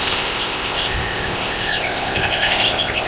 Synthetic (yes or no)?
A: yes